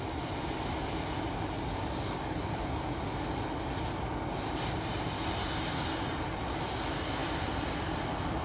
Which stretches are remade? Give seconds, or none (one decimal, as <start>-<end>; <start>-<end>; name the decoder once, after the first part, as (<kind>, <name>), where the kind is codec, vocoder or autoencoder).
7.2-7.8 (vocoder, BigVGAN v2)